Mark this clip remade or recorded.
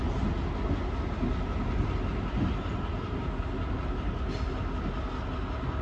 recorded